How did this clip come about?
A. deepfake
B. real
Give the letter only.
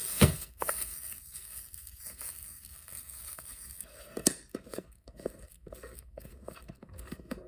A